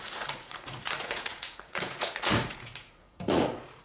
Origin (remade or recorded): remade